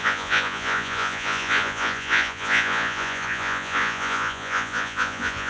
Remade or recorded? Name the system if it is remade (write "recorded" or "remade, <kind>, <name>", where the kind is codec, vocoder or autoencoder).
remade, vocoder, Vocos